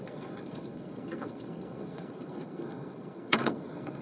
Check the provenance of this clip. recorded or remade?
remade